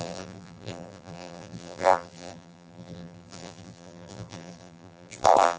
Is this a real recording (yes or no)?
no